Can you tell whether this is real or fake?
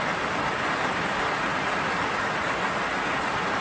real